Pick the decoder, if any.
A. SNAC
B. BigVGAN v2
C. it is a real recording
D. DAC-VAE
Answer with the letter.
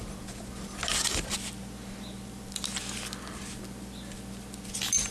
C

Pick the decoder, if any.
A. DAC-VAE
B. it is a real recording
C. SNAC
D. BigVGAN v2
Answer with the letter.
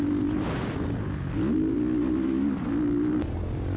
B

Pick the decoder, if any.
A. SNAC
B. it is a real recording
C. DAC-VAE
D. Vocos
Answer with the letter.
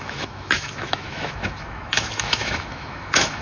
C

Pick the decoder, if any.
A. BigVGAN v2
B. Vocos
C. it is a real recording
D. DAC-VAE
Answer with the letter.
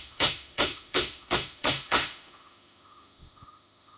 D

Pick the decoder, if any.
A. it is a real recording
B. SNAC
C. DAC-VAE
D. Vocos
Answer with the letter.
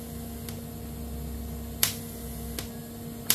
A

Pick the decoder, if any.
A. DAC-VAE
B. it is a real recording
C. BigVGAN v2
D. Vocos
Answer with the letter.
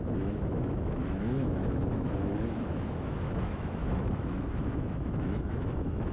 A